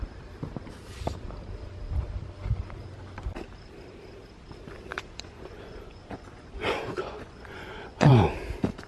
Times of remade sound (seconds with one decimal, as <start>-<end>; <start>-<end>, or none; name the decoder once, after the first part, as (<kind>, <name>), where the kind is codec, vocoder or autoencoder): 4.9-8.1 (vocoder, Vocos)